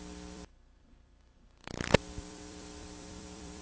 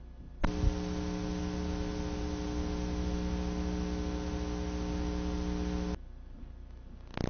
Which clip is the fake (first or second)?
first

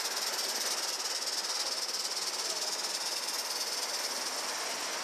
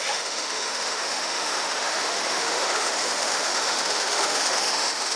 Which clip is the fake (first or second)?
second